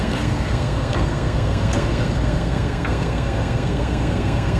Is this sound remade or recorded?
remade